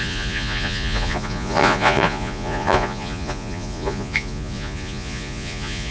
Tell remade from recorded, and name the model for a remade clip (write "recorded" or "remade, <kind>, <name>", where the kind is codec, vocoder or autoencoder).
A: remade, vocoder, Vocos